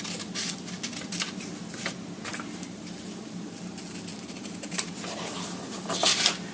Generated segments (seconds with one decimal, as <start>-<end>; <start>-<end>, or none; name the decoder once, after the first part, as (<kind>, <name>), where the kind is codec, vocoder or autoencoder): 2.3-3.6 (vocoder, BigVGAN v2); 4.1-4.9